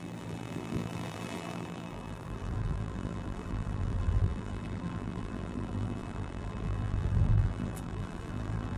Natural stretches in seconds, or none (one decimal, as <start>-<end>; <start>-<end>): none